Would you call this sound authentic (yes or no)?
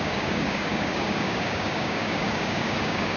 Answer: no